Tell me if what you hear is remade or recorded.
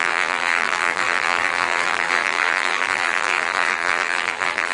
remade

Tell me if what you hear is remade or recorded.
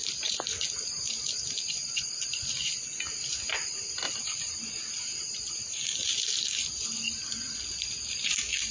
recorded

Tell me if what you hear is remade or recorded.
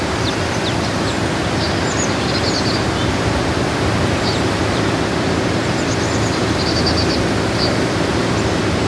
remade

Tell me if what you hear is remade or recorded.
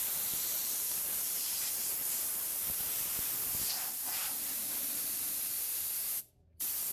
remade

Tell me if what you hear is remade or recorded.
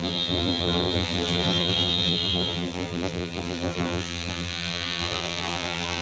remade